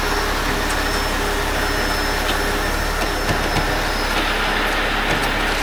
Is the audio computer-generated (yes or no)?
no